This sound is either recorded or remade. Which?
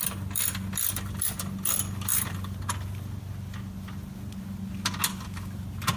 recorded